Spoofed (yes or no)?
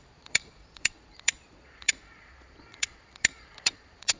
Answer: yes